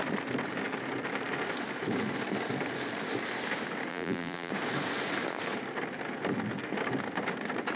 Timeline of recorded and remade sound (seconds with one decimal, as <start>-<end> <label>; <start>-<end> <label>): 0.0-3.9 recorded; 3.9-4.5 remade; 4.5-7.8 recorded